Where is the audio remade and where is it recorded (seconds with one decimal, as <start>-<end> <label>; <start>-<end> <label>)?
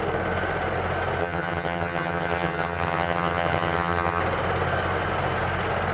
0.0-1.2 recorded; 1.2-4.2 remade; 4.2-5.9 recorded